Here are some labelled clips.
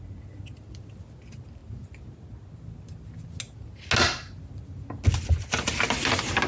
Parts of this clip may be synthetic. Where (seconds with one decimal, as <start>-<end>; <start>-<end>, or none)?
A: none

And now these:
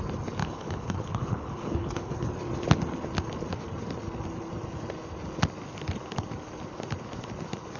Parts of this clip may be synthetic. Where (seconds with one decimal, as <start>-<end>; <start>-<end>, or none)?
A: 0.4-2.3

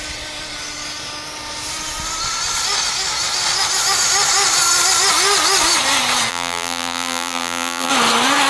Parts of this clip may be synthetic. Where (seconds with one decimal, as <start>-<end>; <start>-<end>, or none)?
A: 6.3-7.9

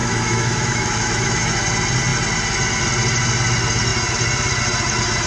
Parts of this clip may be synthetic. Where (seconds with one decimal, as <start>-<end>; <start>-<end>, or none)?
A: 0.0-1.6

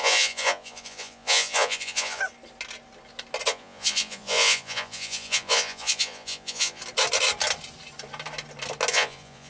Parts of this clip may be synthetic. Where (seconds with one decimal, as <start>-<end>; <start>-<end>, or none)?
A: 0.0-2.2; 3.5-6.8; 8.9-9.5

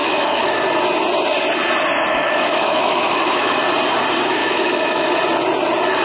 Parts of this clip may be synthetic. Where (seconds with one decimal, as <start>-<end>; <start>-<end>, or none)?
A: 0.0-0.6; 2.1-3.6; 4.4-5.2

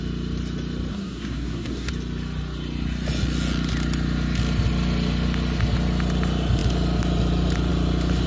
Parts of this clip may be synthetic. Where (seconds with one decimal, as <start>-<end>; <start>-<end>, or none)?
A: 0.9-1.9

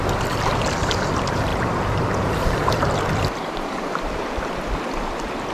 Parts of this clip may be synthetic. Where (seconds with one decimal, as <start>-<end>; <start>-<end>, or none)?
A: 1.5-4.8